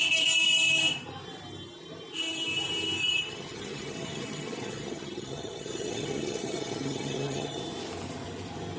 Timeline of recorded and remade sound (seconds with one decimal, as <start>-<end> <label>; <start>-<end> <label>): 0.0-3.0 recorded; 3.0-7.6 remade; 7.6-8.8 recorded